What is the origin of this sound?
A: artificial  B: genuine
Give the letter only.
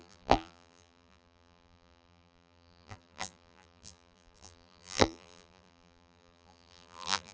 A